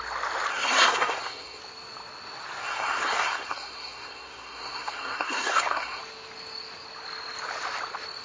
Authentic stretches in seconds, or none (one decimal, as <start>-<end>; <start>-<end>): 0.0-0.5; 1.6-2.6; 6.0-8.2